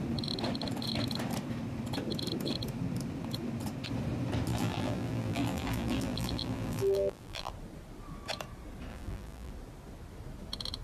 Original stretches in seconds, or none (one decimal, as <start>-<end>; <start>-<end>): 0.0-4.5; 7.5-8.9; 9.5-10.8